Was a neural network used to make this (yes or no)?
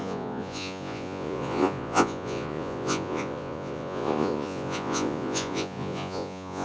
yes